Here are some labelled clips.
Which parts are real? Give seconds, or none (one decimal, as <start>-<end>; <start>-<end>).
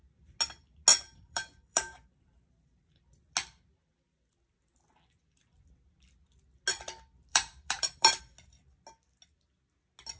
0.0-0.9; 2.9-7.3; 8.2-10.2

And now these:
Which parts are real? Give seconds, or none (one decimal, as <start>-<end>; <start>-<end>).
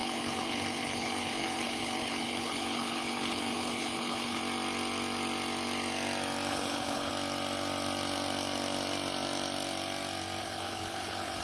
4.4-6.5; 7.1-10.4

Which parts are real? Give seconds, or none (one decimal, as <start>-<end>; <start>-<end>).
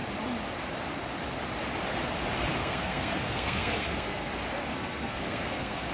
0.0-2.6; 4.3-4.7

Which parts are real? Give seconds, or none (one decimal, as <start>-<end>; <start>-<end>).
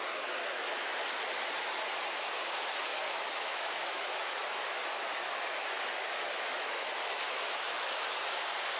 0.0-2.9; 8.1-8.8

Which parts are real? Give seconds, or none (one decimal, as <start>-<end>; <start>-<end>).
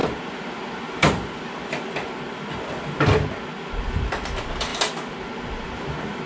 2.1-6.3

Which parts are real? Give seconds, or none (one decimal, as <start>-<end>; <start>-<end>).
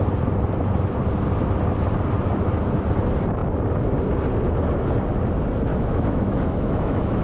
0.0-5.7